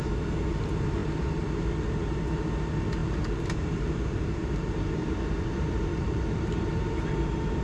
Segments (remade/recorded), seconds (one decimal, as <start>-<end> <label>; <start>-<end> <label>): 0.0-3.0 recorded; 3.0-7.6 remade

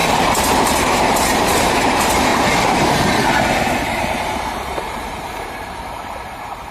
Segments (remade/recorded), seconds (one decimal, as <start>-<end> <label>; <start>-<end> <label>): 0.0-2.3 remade; 2.3-4.7 recorded; 4.7-6.7 remade

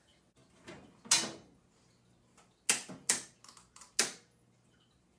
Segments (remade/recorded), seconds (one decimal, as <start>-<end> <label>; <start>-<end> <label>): 0.0-5.2 recorded

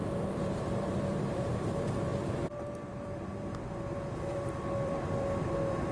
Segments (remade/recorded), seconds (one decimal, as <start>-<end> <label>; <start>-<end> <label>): 0.0-5.9 remade